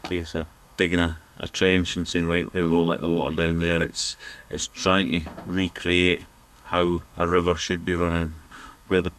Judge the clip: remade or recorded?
remade